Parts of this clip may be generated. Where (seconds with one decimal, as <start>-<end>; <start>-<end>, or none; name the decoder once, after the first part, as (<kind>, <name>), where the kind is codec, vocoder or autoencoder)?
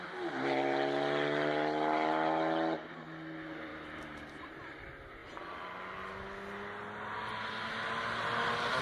none